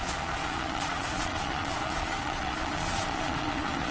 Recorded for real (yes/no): no